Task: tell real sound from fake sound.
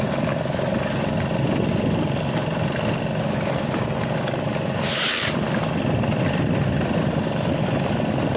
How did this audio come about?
real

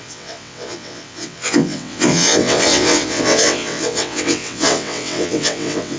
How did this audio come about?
fake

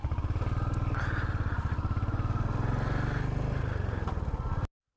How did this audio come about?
real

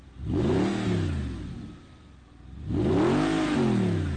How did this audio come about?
real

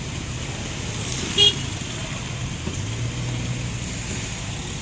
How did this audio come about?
real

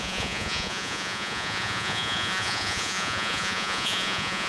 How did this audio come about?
fake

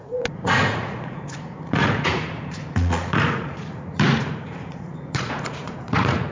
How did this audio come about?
fake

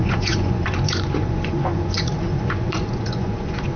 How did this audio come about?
fake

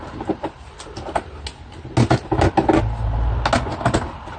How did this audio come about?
real